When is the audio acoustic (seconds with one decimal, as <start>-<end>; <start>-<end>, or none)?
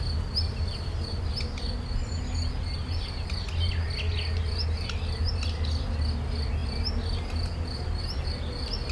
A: 0.0-8.9